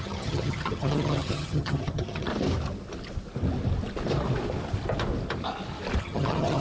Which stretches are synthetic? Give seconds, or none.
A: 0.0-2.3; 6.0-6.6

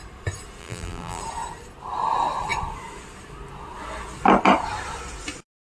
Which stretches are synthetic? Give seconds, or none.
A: 0.6-1.2

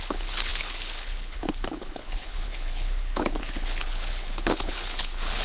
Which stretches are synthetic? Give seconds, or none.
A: 0.0-5.4

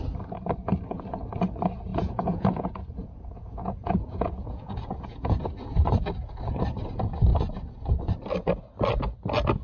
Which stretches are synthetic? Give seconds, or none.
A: 1.9-5.4